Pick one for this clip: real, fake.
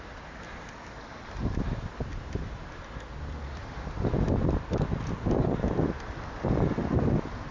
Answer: real